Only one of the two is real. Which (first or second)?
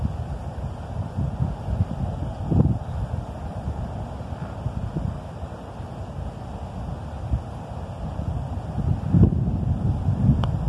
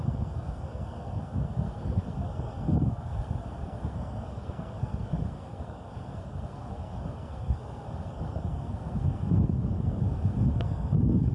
first